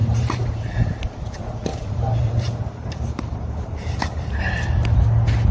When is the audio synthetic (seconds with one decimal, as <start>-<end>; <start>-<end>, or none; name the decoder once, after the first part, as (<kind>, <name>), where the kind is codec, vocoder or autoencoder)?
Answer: 0.0-0.6 (vocoder, BigVGAN v2); 1.7-5.0